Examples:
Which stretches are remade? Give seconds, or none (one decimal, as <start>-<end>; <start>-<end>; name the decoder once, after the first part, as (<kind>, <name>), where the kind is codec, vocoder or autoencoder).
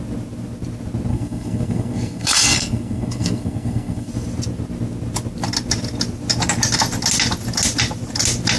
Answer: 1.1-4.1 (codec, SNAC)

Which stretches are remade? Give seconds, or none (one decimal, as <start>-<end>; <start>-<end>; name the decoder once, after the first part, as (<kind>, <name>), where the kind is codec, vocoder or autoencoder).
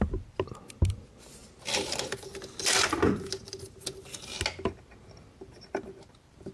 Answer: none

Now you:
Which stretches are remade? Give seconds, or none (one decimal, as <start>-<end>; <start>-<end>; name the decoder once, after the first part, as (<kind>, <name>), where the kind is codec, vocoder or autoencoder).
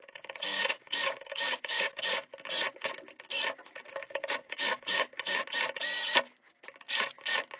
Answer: 0.0-2.3 (codec, DAC); 3.9-5.1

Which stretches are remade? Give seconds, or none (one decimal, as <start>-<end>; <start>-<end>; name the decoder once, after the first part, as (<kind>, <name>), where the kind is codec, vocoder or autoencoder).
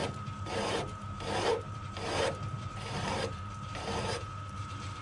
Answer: 0.0-5.0 (vocoder, BigVGAN v2)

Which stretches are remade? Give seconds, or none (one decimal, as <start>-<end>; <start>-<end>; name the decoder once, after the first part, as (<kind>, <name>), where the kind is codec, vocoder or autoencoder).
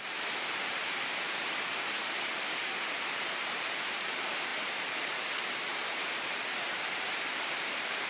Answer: 0.0-8.1 (vocoder, BigVGAN v2)